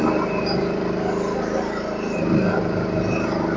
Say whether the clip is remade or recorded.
remade